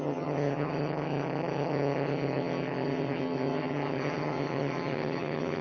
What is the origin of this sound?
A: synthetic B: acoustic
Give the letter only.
A